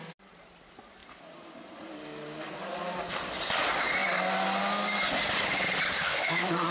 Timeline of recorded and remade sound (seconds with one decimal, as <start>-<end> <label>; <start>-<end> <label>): 0.0-5.9 recorded; 5.9-6.7 remade